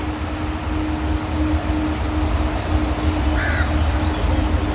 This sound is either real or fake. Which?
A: real